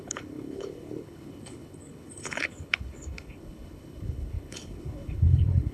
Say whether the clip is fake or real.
fake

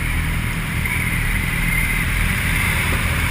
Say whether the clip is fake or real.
fake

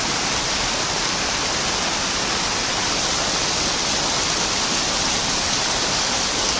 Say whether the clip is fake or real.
real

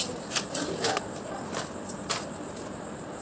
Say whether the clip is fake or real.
real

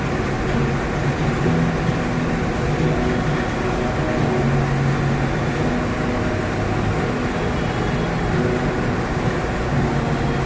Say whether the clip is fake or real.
real